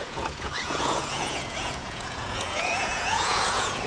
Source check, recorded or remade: remade